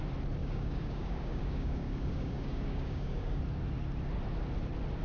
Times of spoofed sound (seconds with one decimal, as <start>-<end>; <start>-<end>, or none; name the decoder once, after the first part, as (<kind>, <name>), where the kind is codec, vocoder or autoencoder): 0.4-3.4 (codec, DAC)